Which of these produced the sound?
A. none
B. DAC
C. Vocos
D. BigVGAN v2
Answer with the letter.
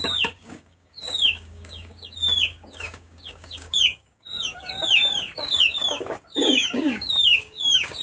B